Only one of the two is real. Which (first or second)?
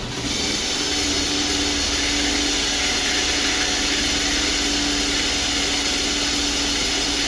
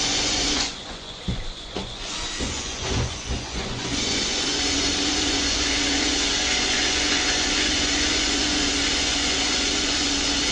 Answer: first